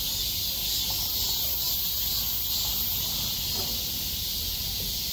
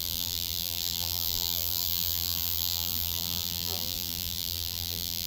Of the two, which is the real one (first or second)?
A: first